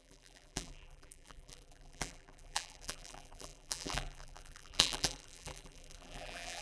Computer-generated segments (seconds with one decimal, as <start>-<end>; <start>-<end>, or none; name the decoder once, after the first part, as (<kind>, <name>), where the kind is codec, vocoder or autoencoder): 0.0-6.6 (vocoder, BigVGAN v2)